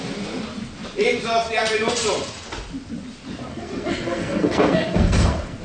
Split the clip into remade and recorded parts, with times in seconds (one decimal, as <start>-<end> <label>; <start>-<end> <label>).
0.0-3.5 recorded; 3.5-5.6 remade